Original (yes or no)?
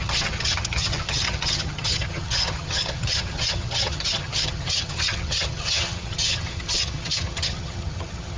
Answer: no